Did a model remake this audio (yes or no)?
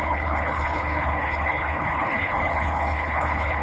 yes